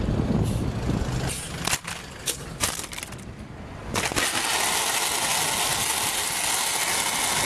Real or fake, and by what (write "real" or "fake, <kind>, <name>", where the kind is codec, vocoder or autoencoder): real